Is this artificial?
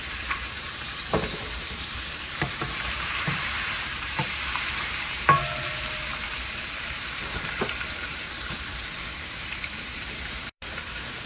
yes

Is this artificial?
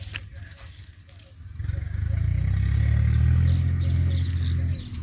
no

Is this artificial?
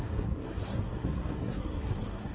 yes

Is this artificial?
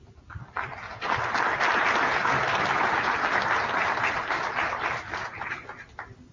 no